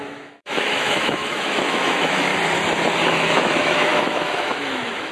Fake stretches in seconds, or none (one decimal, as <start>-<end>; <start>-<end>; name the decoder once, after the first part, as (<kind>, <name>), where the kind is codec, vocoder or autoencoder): 0.0-2.3 (autoencoder, DAC-VAE); 3.1-5.1